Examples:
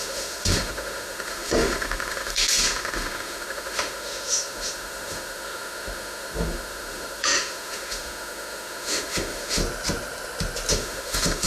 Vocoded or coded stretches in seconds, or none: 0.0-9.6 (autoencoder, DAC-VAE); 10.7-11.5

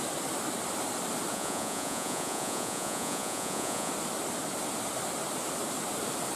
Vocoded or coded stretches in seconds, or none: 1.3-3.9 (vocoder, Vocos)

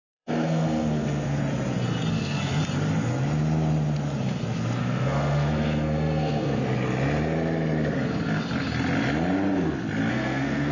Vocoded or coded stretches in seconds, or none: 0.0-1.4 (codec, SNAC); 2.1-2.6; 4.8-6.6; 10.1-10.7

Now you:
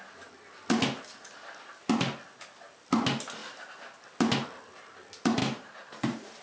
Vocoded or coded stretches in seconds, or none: 5.4-6.4 (vocoder, BigVGAN v2)

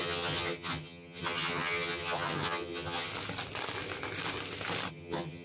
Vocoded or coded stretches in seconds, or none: 0.0-3.1 (vocoder, HiFi-GAN); 4.9-5.4